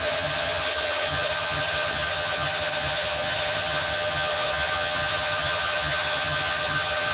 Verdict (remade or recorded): remade